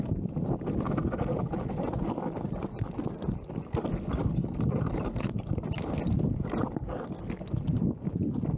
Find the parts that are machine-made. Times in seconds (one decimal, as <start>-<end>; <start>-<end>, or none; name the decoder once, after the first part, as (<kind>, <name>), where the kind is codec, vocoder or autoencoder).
none